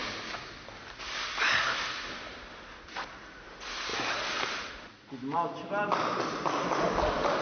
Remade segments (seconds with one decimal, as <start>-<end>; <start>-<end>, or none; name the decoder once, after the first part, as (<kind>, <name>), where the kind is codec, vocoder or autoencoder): 0.0-2.4 (vocoder, BigVGAN v2); 3.9-4.9

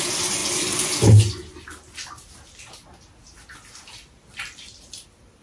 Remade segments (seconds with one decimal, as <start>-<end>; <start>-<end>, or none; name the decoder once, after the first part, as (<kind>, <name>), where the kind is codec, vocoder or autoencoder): none

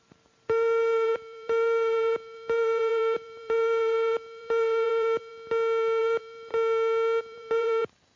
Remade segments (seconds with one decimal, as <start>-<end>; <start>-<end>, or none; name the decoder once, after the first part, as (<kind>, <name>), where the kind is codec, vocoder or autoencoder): 0.0-5.3 (vocoder, BigVGAN v2); 6.0-6.5; 7.2-8.2

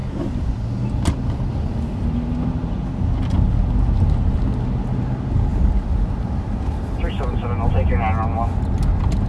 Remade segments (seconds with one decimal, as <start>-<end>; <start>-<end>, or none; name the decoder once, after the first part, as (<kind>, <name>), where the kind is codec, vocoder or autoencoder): 5.5-7.3 (vocoder, BigVGAN v2)

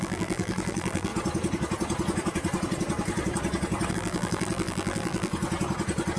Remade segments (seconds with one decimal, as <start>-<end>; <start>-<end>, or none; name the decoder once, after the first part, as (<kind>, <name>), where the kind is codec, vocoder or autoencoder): 0.0-1.1 (vocoder, BigVGAN v2); 3.9-5.3

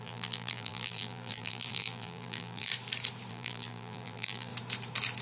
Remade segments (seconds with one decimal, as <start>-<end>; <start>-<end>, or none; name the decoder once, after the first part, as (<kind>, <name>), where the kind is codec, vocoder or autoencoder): 0.0-2.7 (vocoder, BigVGAN v2); 3.3-4.5